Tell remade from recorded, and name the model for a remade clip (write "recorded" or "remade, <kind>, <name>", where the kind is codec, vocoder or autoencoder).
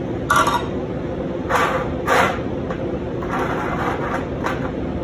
recorded